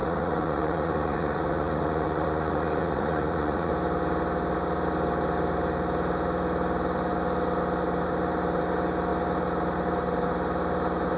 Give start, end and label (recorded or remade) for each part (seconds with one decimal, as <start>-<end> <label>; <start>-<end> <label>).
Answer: 0.0-3.7 remade; 3.7-11.2 recorded